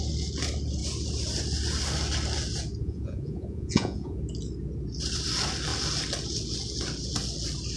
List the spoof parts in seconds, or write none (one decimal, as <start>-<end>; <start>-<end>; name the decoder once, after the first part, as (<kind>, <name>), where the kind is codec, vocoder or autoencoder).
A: 2.8-4.2 (vocoder, Vocos)